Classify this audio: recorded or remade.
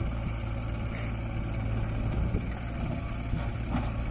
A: recorded